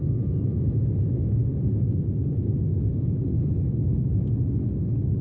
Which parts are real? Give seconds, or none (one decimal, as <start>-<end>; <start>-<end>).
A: 0.0-2.9; 4.1-5.2